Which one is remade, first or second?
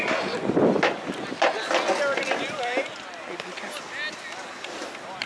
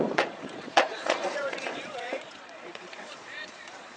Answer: second